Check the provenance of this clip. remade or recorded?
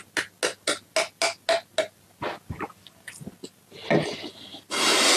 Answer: recorded